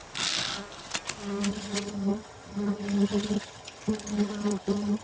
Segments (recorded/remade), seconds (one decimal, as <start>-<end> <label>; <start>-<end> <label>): 0.0-1.5 recorded; 1.5-5.0 remade